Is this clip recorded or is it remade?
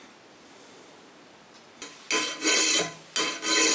recorded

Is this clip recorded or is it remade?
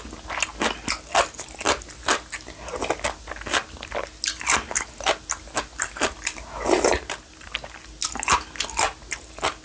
recorded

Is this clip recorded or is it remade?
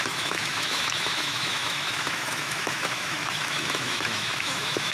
remade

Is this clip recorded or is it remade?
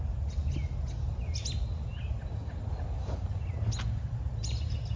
recorded